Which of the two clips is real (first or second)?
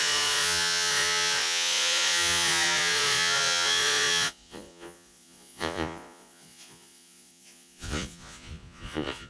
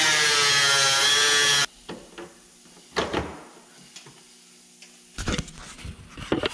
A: second